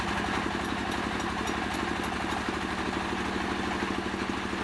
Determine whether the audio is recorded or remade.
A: recorded